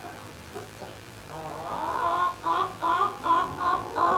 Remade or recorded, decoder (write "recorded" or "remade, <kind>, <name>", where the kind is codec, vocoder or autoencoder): remade, vocoder, BigVGAN v2